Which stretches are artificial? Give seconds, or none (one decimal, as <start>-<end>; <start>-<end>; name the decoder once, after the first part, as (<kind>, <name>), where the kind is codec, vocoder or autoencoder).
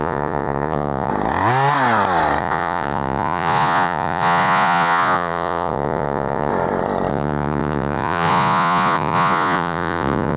0.0-1.1 (vocoder, Vocos); 2.4-6.5; 7.1-10.4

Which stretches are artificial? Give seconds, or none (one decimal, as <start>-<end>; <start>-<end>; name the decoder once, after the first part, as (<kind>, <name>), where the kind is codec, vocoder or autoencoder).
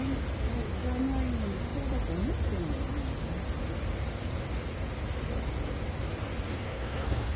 6.5-7.4 (codec, SNAC)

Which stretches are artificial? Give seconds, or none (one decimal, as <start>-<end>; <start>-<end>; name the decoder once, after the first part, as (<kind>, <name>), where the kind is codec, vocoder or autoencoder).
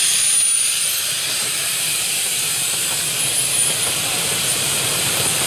0.0-5.5 (vocoder, BigVGAN v2)